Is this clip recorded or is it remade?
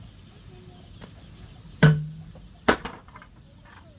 recorded